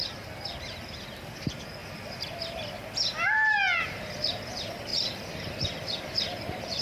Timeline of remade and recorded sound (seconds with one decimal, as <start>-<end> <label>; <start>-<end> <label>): 0.0-1.0 remade; 1.0-1.8 recorded; 1.8-3.5 remade; 3.5-4.9 recorded; 4.9-6.8 remade